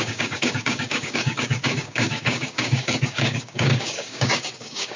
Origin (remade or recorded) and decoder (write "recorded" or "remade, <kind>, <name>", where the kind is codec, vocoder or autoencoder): remade, codec, DAC